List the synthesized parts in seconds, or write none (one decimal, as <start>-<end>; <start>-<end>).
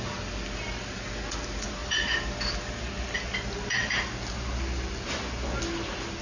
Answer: none